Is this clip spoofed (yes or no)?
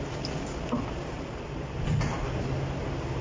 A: no